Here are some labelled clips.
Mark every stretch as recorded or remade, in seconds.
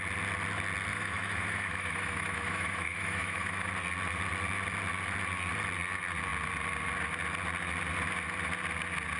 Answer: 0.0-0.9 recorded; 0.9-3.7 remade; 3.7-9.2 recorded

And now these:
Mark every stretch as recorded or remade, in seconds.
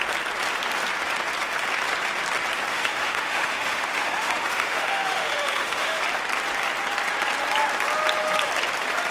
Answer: 0.0-2.7 recorded; 2.7-6.0 remade; 6.0-9.1 recorded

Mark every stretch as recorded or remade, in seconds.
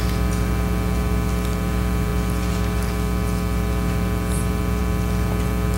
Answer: 0.0-5.8 recorded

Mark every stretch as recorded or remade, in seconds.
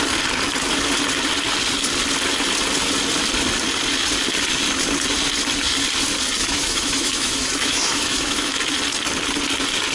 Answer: 0.0-6.4 recorded; 6.4-8.6 remade; 8.6-9.9 recorded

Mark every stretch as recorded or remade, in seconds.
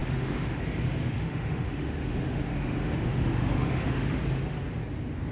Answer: 0.0-0.6 remade; 0.6-1.0 recorded; 1.0-4.2 remade; 4.2-5.3 recorded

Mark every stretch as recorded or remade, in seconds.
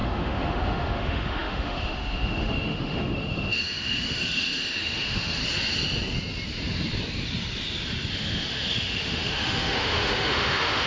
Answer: 0.0-5.4 remade; 5.4-8.1 recorded; 8.1-10.9 remade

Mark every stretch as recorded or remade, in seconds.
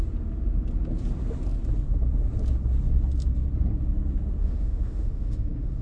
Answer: 0.0-4.4 recorded; 4.4-5.8 remade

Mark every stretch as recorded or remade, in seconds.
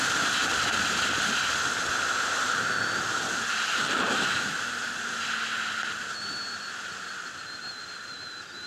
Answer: 0.0-4.1 recorded; 4.1-4.7 remade; 4.7-8.7 recorded